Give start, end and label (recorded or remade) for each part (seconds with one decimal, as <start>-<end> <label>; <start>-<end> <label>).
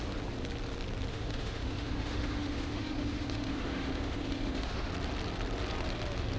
0.0-1.1 recorded; 1.1-4.9 remade; 4.9-6.4 recorded